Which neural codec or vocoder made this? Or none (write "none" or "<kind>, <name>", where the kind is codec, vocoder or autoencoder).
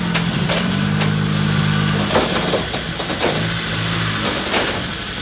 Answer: none